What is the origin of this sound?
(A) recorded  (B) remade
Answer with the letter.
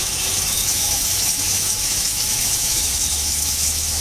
B